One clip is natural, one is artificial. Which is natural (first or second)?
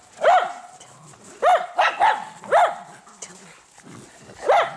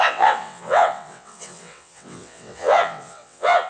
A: first